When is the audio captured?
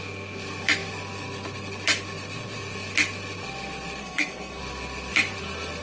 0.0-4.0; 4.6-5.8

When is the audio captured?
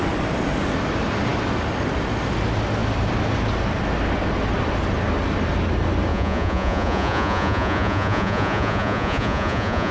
0.0-6.1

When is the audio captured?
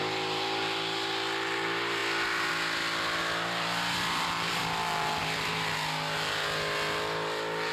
0.0-3.2; 4.6-5.2; 5.7-7.7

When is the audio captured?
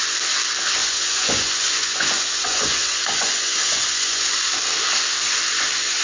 0.0-0.8; 4.3-6.0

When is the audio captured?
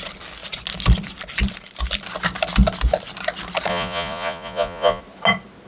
0.0-3.7; 5.0-5.7